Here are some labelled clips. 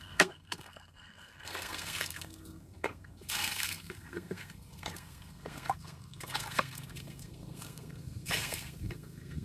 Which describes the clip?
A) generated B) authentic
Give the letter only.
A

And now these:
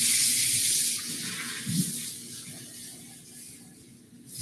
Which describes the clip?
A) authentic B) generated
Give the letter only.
A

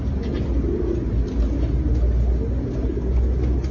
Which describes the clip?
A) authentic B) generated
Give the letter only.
A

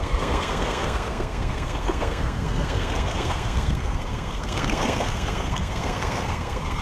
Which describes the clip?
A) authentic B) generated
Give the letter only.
B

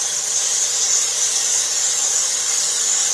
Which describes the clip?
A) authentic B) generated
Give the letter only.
B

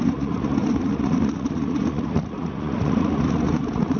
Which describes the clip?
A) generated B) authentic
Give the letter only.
A